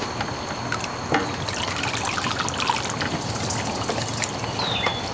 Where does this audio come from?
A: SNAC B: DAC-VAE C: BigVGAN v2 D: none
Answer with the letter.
D